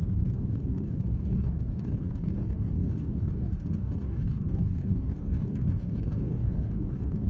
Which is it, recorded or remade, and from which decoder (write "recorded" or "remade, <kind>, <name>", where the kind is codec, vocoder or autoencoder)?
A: remade, codec, DAC